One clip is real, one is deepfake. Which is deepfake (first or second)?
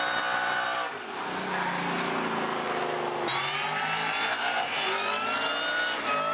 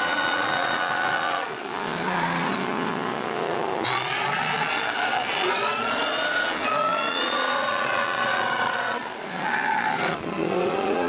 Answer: second